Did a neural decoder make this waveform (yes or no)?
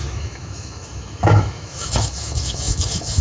yes